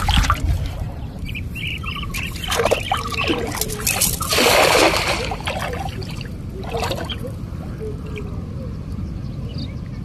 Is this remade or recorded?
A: recorded